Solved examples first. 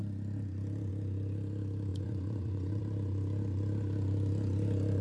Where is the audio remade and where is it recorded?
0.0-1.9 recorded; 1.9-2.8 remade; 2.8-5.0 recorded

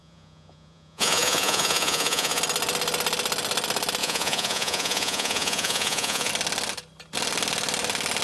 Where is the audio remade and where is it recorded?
0.0-2.4 remade; 2.4-4.0 recorded; 4.0-6.3 remade; 6.3-8.2 recorded

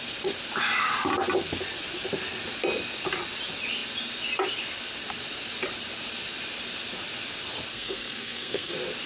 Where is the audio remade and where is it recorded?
0.0-7.7 recorded; 7.7-8.7 remade; 8.7-9.1 recorded

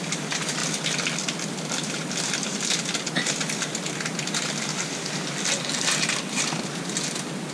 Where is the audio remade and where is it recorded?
0.0-7.5 recorded

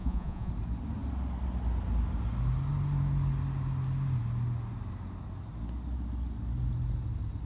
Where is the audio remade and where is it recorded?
0.0-0.5 remade; 0.5-7.5 recorded

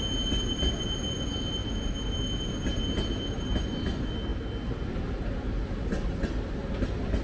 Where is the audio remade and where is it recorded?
0.0-7.2 recorded

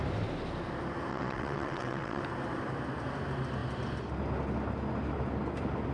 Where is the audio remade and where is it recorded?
0.0-1.1 recorded; 1.1-2.2 remade; 2.2-5.9 recorded

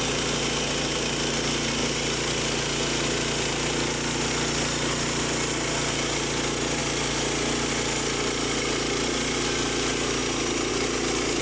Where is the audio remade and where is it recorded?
0.0-11.4 recorded